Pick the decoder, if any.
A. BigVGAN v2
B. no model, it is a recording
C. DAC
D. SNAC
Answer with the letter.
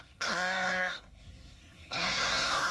D